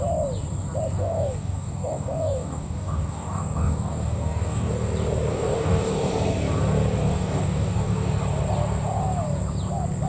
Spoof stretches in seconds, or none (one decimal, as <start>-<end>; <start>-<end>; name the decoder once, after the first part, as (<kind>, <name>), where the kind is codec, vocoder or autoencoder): 1.0-4.7 (codec, DAC); 5.3-6.1; 7.0-8.1